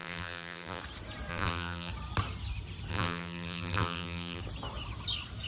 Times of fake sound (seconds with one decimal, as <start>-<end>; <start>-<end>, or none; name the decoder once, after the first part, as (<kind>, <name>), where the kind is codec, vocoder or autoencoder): 0.0-0.8 (vocoder, BigVGAN v2); 1.3-1.9; 2.9-4.4